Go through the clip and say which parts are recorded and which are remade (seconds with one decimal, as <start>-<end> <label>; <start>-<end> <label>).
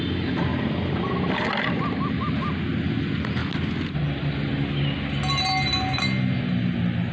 0.0-7.1 recorded